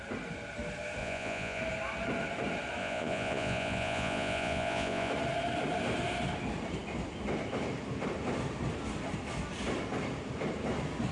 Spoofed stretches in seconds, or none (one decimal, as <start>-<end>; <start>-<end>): 1.0-1.6; 2.8-5.1